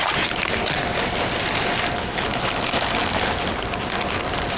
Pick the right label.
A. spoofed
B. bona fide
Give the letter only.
B